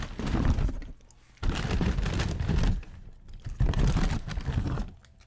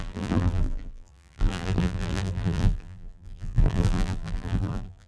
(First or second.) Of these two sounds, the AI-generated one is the second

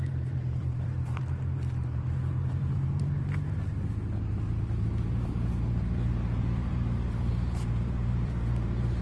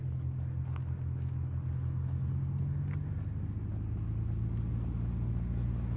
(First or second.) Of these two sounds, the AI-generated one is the first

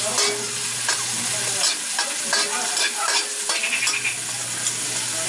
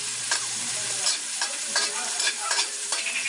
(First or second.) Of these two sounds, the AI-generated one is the second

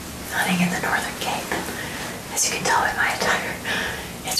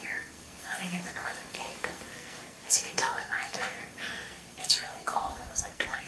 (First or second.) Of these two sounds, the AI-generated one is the second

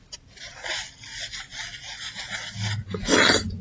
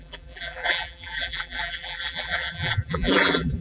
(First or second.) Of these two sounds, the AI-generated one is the second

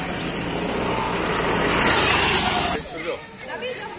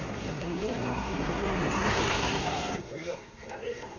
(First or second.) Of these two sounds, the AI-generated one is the second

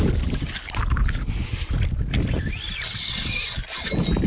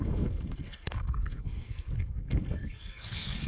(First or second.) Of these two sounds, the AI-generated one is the second